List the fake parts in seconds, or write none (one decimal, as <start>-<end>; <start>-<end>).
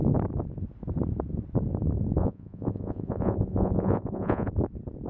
2.2-4.5